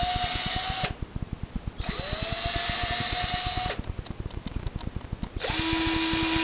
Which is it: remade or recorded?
recorded